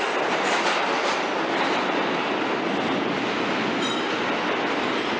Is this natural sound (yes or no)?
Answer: yes